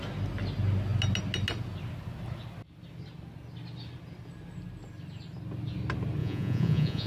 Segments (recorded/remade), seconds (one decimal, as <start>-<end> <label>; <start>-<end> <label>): 0.0-6.2 recorded; 6.2-7.1 remade